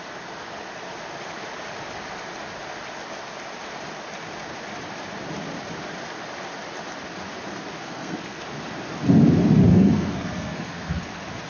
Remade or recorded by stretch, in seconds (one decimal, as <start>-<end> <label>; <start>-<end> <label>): 0.0-7.7 recorded; 7.7-8.4 remade; 8.4-9.7 recorded; 9.7-11.0 remade; 11.0-11.5 recorded

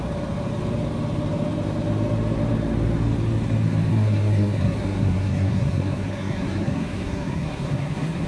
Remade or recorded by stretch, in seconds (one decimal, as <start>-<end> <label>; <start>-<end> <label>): 0.0-3.9 recorded; 3.9-8.3 remade